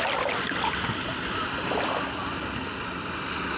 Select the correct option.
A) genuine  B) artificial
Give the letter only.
A